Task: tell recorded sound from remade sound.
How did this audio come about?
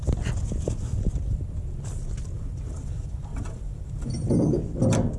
recorded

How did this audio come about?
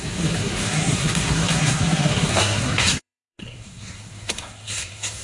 remade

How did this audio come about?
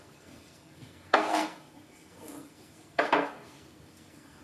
remade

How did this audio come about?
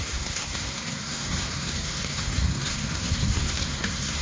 remade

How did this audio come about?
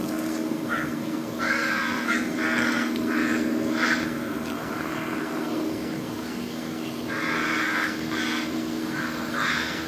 remade